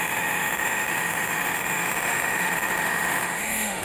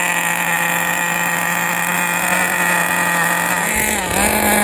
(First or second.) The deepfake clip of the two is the first